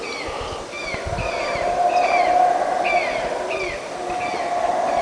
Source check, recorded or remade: recorded